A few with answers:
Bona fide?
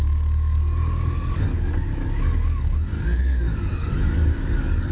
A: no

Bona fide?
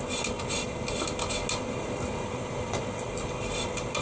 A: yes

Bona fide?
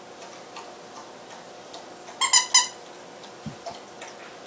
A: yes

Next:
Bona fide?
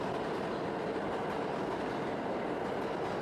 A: yes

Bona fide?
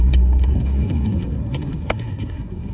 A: no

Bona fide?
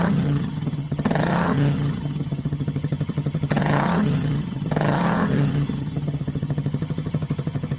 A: no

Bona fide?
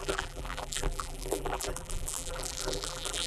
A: no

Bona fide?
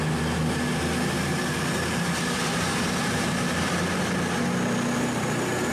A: yes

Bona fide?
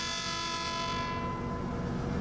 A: yes